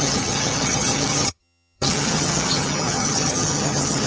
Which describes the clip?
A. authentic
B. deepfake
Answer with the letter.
B